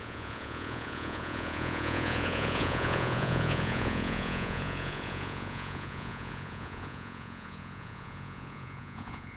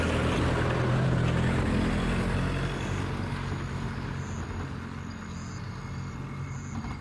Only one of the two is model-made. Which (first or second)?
first